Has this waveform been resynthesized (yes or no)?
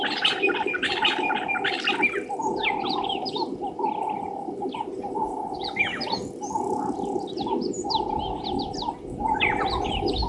no